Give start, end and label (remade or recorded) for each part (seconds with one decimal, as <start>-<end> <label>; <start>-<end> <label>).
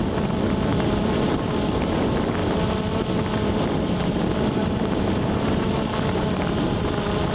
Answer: 0.0-0.7 recorded; 0.7-1.8 remade; 1.8-4.6 recorded; 4.6-6.7 remade; 6.7-7.3 recorded